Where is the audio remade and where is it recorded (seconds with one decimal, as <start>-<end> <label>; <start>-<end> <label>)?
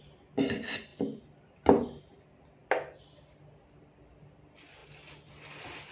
0.0-5.9 recorded